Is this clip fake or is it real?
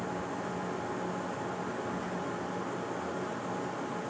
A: real